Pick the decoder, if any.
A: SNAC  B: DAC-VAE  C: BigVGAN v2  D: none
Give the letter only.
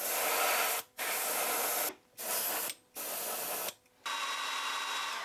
D